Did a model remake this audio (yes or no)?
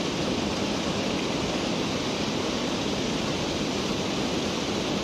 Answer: no